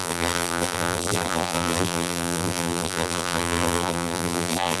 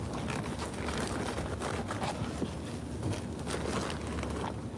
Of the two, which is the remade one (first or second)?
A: first